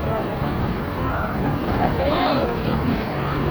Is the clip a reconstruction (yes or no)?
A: yes